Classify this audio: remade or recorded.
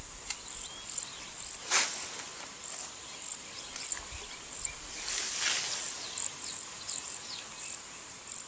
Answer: recorded